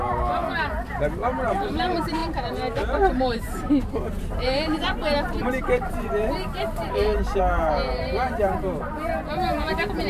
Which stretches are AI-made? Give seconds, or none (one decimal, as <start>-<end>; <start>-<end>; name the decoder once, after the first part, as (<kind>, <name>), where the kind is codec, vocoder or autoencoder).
0.0-0.4 (vocoder, BigVGAN v2); 1.0-10.1